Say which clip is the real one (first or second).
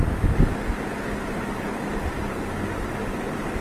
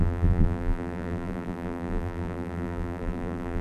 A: first